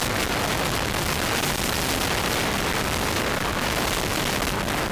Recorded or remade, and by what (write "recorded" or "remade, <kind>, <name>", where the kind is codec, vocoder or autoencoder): recorded